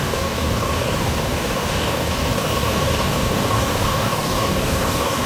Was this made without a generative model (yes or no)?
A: no